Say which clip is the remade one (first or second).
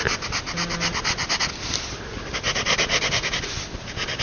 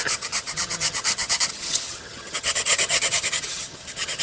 second